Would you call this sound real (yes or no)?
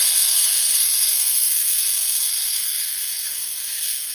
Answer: no